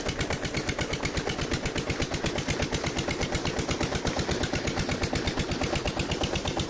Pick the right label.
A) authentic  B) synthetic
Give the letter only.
A